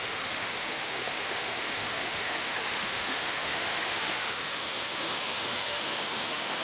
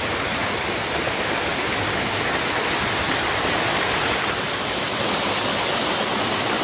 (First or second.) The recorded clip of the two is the second